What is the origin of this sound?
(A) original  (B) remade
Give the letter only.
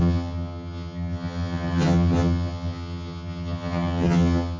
B